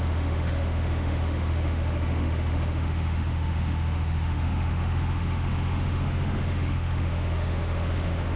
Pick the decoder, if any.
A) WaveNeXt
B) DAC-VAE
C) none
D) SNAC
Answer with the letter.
B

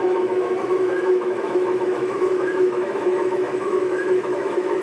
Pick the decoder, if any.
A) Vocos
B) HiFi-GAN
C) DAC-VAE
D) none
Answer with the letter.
C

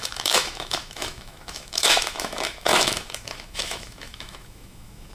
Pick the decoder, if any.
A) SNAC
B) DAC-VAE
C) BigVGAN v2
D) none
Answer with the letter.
B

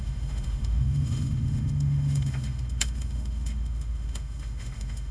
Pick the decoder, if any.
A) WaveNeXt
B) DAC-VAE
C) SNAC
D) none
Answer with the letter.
B